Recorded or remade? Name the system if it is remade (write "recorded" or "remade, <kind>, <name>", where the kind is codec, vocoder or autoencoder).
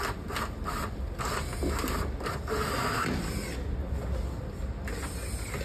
recorded